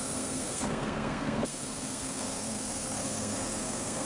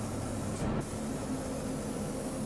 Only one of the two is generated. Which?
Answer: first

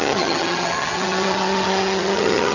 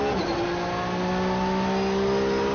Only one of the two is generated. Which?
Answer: first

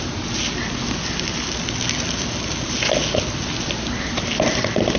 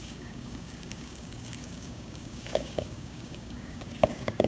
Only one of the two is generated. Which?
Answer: second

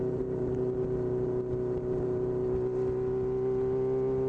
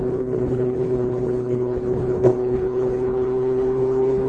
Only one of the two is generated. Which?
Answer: second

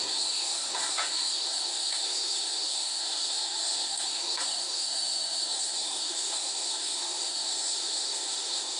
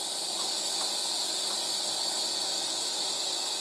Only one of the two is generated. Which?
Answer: first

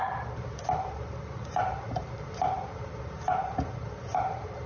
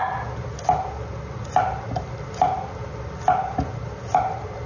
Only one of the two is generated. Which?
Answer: first